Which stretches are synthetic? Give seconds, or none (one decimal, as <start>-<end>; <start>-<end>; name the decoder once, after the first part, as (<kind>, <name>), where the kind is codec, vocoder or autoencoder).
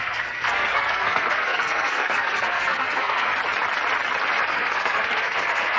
0.0-3.3 (codec, SNAC); 4.5-5.8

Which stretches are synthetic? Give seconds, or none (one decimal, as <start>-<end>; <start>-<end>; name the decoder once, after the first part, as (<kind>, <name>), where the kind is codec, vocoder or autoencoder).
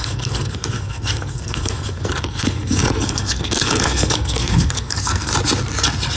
0.0-5.3 (codec, SNAC)